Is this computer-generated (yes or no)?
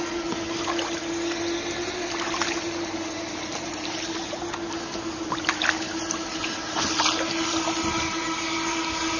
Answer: no